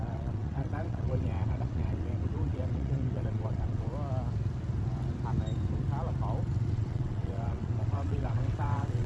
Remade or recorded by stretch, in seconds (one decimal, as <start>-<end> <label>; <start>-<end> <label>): 0.0-3.9 remade; 3.9-6.7 recorded; 6.7-9.1 remade